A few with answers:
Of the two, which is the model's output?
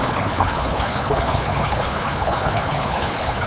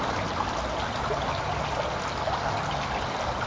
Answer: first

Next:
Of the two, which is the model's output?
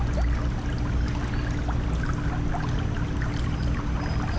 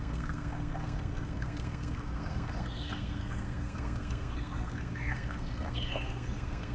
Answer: second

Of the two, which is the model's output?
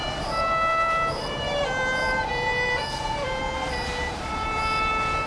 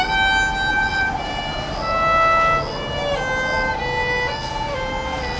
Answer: first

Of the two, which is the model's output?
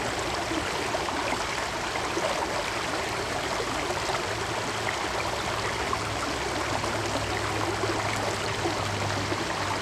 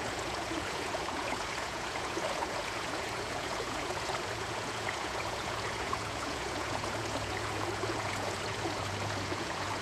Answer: second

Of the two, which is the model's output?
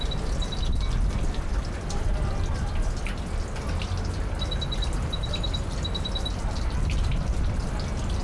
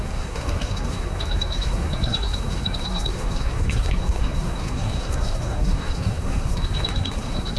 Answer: second